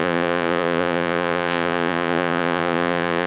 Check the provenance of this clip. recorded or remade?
remade